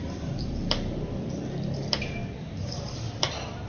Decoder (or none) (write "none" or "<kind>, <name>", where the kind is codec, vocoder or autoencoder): none